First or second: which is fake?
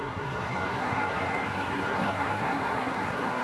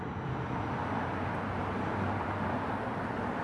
first